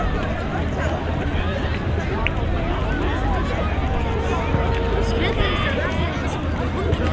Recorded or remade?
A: recorded